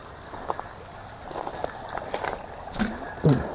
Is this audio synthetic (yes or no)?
no